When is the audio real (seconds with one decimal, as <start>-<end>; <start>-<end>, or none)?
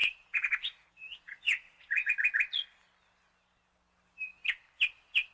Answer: 2.1-5.3